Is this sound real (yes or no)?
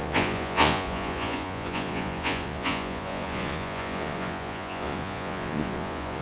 no